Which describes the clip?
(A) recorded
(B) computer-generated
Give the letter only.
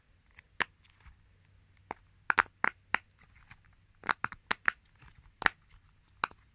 A